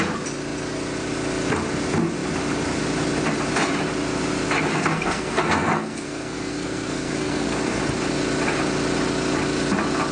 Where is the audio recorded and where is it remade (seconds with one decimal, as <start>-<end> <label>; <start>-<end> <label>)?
0.0-4.7 recorded; 4.7-7.8 remade; 7.8-10.1 recorded